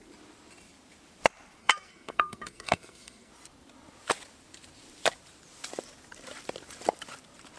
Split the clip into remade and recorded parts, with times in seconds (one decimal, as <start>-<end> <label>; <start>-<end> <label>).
0.0-1.6 recorded; 1.6-3.3 remade; 3.3-7.6 recorded